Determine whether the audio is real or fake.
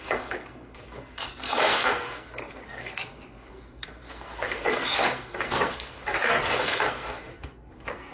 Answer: fake